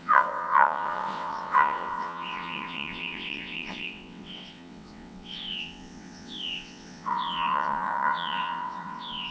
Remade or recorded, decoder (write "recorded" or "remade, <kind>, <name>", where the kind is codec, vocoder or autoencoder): remade, vocoder, WaveNeXt